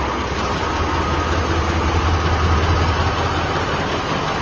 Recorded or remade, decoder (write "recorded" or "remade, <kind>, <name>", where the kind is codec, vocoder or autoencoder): recorded